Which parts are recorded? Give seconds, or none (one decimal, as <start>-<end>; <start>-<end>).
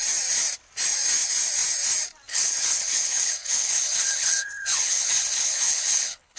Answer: 0.0-2.3